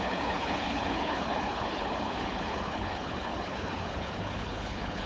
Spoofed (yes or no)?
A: yes